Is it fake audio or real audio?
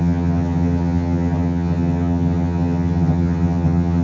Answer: fake